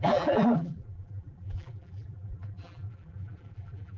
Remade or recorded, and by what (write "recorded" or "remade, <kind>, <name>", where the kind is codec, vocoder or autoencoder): remade, vocoder, BigVGAN v2